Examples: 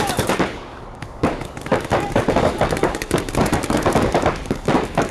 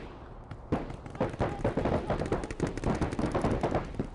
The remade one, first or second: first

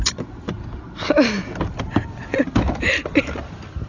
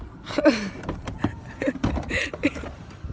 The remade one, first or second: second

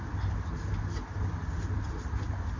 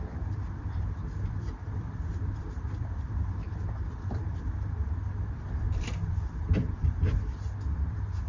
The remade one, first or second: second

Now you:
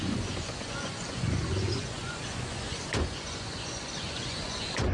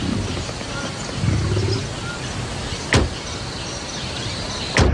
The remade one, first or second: first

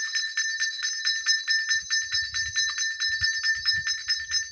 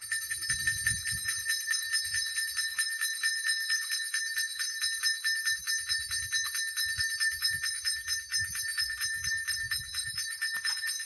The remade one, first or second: second